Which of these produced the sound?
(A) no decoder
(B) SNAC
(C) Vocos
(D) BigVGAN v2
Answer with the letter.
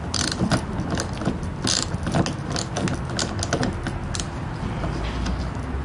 A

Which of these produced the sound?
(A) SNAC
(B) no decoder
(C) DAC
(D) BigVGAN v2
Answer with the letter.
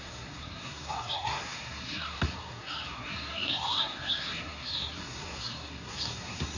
A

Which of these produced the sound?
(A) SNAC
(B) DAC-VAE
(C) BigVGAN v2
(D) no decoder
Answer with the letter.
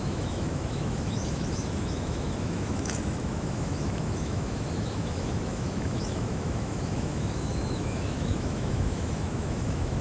B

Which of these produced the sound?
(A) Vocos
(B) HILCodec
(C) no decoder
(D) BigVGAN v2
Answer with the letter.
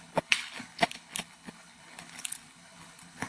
B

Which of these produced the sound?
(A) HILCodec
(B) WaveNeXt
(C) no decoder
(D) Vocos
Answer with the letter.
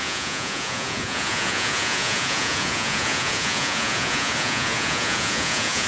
D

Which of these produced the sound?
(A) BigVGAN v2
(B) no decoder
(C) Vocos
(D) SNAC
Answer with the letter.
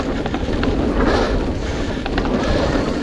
B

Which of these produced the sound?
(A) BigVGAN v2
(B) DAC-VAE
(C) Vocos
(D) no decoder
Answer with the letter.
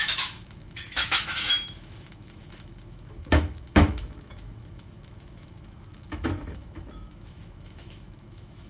B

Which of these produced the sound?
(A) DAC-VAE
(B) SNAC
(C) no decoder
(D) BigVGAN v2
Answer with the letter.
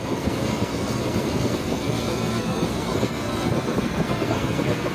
B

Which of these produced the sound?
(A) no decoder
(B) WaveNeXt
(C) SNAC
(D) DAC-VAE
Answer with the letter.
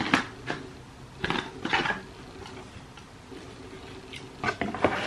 A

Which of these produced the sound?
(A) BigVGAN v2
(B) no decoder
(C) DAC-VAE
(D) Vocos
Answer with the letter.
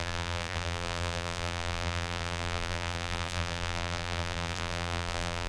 A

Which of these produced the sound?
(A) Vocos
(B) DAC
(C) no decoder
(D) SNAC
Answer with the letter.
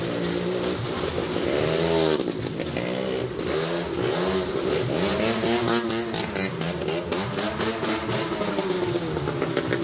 C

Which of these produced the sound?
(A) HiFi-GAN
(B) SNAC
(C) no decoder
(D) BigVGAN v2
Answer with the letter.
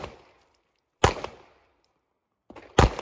C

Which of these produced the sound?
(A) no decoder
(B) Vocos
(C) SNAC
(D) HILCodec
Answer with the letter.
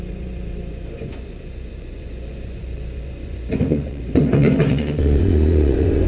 B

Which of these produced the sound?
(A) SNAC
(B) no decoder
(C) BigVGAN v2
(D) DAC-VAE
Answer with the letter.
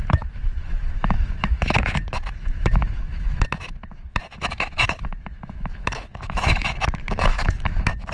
D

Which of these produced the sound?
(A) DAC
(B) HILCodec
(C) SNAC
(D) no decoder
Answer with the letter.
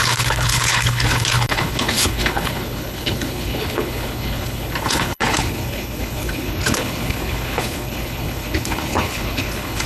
B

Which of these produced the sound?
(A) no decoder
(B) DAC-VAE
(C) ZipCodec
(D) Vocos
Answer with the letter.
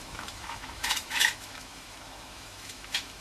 B